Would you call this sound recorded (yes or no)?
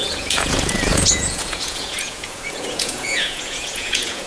no